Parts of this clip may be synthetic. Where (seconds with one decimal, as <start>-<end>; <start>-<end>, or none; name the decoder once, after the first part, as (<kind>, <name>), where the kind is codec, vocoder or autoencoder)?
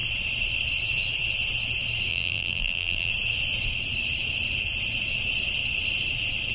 2.1-3.1 (vocoder, BigVGAN v2)